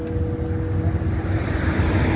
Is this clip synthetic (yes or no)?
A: no